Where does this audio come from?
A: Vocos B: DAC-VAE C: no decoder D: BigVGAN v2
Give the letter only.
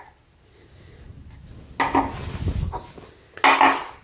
C